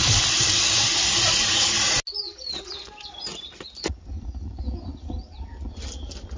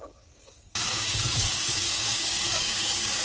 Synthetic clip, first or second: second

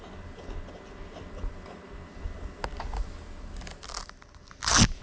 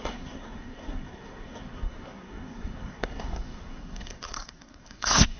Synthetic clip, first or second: second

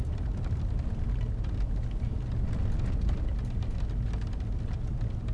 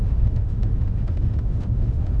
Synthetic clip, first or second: second